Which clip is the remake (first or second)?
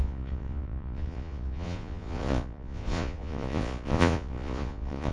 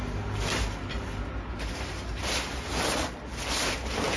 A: first